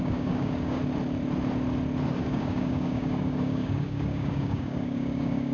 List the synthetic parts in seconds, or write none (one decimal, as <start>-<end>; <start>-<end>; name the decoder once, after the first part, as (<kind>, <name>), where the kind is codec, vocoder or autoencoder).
0.0-0.8 (codec, DAC); 2.2-5.5